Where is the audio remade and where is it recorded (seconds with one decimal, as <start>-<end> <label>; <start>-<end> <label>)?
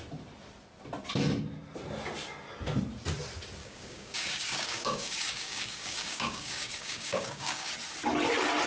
0.0-3.6 recorded; 3.6-7.7 remade; 7.7-8.7 recorded